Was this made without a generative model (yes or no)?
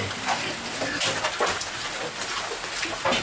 yes